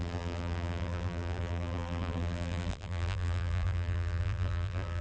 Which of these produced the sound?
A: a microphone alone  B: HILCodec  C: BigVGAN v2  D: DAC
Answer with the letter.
C